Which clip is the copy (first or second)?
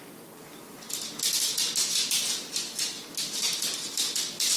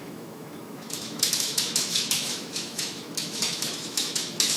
second